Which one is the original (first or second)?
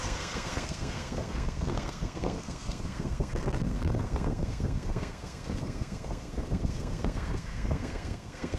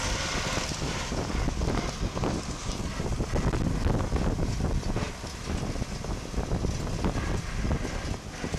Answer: second